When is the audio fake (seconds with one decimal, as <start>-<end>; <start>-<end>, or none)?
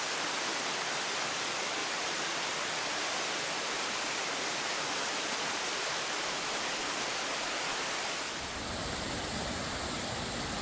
none